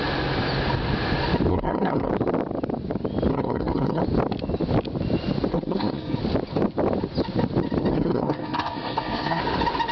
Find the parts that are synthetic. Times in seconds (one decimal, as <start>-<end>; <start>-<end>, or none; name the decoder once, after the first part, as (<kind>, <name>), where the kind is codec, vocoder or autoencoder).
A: 1.5-2.1 (codec, SNAC); 3.3-4.0; 5.5-6.2; 7.9-9.4